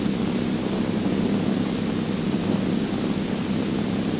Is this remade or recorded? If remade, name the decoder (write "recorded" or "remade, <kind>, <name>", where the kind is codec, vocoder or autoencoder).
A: recorded